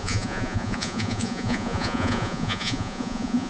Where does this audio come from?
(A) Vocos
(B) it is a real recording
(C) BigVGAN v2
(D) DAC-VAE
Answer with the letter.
A